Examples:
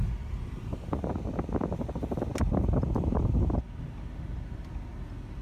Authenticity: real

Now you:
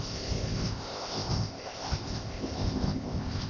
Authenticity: fake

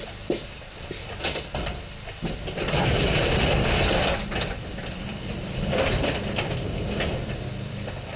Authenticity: fake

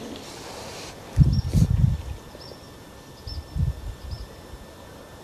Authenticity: real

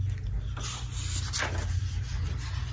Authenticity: real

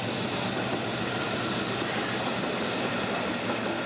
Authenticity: real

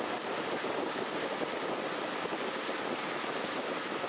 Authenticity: real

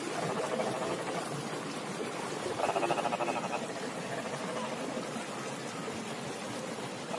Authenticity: real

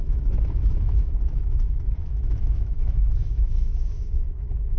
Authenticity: fake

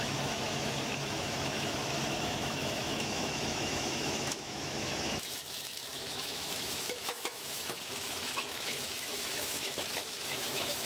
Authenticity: fake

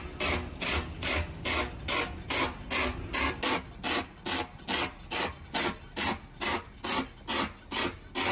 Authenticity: real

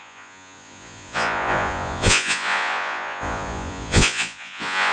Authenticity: fake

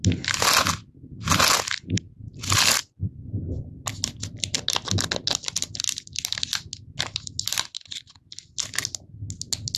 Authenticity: real